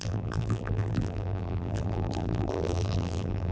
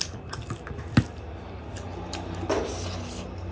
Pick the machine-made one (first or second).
first